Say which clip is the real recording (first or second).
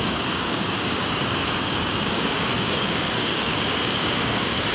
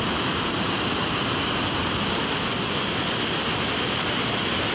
second